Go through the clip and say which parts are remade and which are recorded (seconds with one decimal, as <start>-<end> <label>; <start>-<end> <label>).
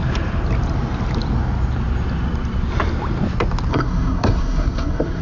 0.0-3.7 recorded; 3.7-5.2 remade